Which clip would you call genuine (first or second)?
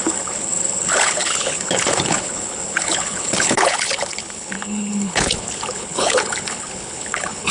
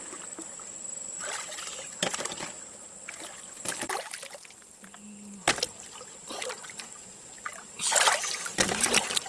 second